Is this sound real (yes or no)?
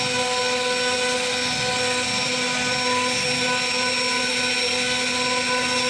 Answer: yes